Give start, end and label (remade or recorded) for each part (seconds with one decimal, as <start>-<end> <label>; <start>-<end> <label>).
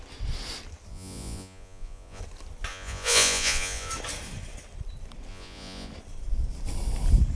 0.0-0.9 recorded; 0.9-2.2 remade; 2.2-2.7 recorded; 2.7-3.9 remade; 3.9-5.3 recorded; 5.3-5.9 remade; 5.9-7.3 recorded